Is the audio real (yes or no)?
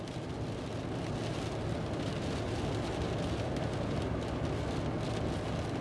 yes